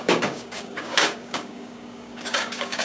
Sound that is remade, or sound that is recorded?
remade